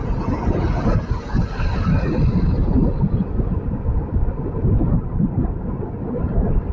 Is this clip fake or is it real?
real